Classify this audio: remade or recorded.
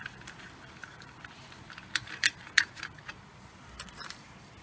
remade